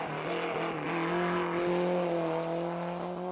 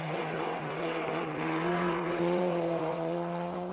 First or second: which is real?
first